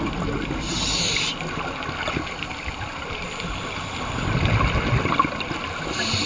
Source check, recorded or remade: recorded